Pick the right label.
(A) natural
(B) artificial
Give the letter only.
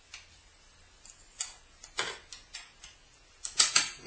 A